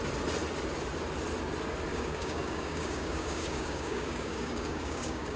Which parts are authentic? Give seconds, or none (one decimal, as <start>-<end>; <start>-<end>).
0.0-1.9